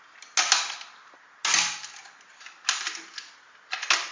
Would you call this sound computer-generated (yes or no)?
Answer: no